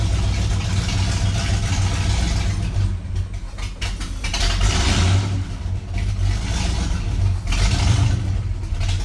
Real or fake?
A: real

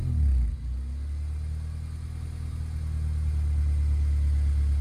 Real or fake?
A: real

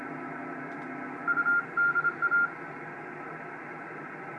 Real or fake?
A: real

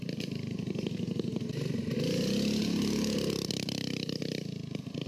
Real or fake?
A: real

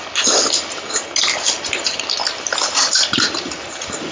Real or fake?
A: real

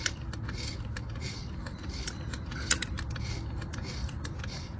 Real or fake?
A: real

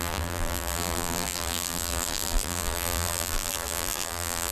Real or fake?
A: fake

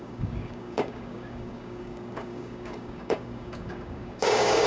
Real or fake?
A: fake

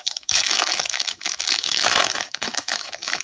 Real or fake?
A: fake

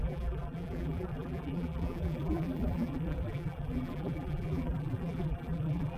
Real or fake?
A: fake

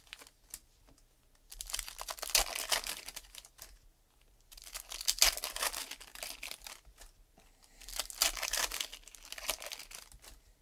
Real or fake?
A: real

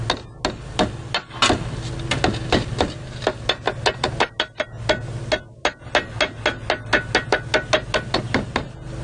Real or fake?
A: real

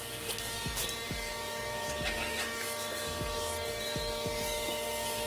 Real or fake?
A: fake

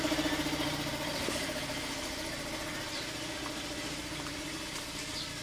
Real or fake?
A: real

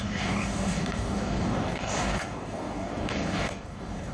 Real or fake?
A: fake